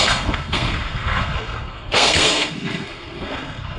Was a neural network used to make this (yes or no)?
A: yes